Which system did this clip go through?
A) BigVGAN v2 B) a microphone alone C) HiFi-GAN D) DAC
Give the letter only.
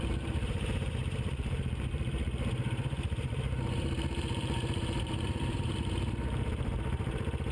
A